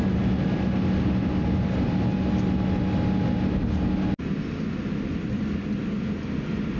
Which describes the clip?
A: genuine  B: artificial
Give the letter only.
A